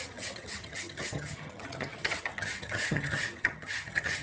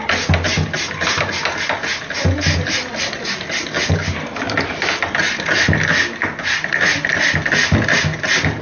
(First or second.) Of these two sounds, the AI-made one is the first